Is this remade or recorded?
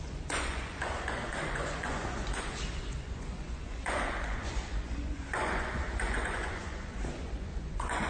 remade